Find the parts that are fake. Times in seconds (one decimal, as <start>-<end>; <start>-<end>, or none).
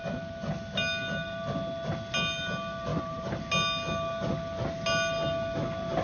2.9-3.4